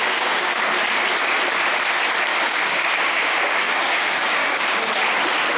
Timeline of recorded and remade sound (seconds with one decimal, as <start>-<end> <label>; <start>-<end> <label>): 0.0-0.6 remade; 0.6-2.3 recorded; 2.3-4.9 remade; 4.9-5.6 recorded